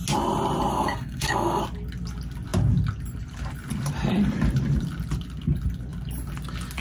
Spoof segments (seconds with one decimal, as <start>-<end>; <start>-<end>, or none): 0.7-1.6